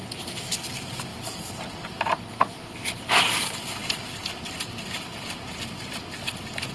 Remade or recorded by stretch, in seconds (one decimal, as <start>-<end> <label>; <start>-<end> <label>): 0.0-6.7 recorded